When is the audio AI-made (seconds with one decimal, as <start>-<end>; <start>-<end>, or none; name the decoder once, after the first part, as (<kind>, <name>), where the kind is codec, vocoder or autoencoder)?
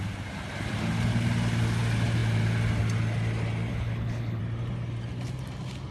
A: 3.7-4.4 (codec, HILCodec)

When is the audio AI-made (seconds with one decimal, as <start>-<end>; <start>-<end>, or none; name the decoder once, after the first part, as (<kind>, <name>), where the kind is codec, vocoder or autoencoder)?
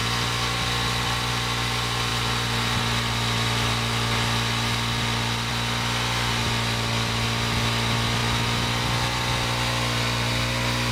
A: none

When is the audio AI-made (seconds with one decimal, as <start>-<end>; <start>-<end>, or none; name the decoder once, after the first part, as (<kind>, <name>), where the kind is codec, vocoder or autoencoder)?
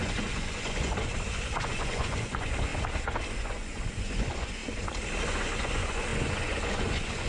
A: 0.0-2.7 (vocoder, Vocos); 3.4-4.6; 5.3-7.3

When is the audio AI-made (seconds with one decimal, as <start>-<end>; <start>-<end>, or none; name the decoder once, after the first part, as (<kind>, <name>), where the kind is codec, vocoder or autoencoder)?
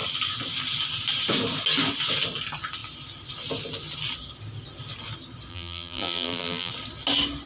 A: 5.5-6.7 (vocoder, BigVGAN v2)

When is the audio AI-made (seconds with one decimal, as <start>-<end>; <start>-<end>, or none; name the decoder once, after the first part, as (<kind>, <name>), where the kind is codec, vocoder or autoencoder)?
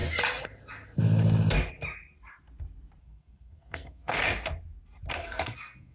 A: 3.0-4.2 (codec, SNAC); 5.1-5.9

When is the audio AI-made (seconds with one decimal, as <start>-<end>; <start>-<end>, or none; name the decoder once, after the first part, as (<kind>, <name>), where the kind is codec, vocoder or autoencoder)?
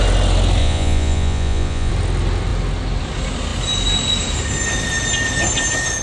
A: 0.6-1.9 (vocoder, Vocos)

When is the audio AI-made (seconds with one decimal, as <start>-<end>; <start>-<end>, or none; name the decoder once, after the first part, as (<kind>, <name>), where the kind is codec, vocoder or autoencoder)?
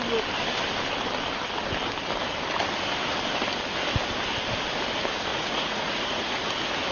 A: 5.3-6.5 (vocoder, Vocos)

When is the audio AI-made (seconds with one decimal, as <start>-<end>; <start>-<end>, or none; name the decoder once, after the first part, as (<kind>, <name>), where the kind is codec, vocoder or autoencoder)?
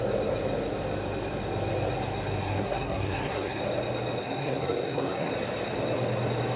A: 2.4-3.6 (codec, SNAC); 4.2-5.3